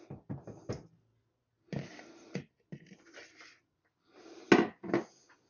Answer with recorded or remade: recorded